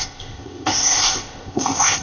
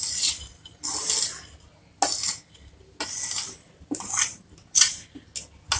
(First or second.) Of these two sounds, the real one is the second